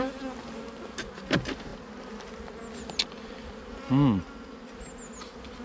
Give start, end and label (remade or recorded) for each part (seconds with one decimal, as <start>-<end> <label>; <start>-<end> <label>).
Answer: 0.0-5.6 recorded